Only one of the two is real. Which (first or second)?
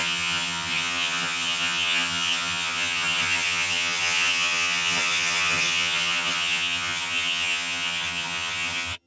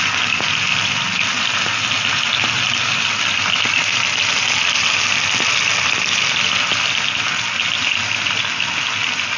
second